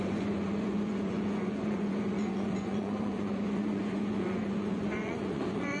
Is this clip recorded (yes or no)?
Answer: no